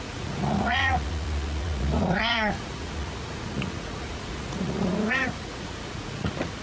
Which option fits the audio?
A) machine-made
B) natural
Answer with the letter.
A